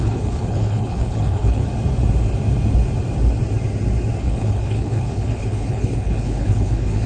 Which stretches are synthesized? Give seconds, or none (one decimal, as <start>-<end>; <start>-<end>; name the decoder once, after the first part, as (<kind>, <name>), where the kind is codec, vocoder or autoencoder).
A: 0.0-1.6 (codec, HILCodec); 4.2-7.1